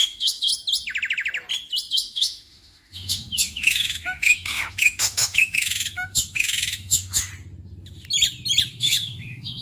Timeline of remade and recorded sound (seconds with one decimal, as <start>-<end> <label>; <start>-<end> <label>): 0.0-0.5 remade; 0.5-1.9 recorded; 1.9-7.3 remade; 7.3-8.7 recorded; 8.7-9.6 remade